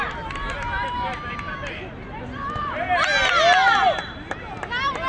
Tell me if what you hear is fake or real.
real